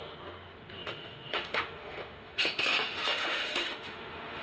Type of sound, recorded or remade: remade